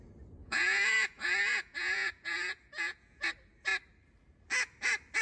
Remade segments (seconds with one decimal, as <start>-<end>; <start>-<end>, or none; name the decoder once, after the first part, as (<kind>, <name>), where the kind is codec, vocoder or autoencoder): 0.4-3.3 (vocoder, Vocos)